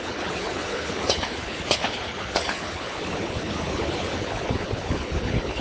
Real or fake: fake